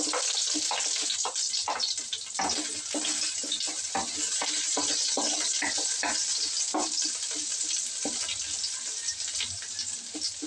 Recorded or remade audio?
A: recorded